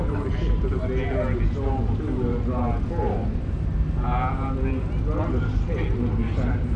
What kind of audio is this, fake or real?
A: real